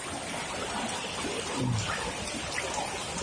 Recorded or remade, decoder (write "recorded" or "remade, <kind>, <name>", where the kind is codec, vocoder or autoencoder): remade, vocoder, BigVGAN v2